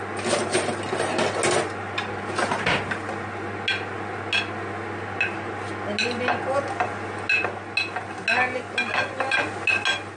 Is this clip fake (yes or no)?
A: no